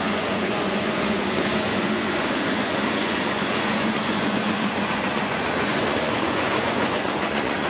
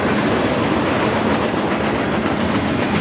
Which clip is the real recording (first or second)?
second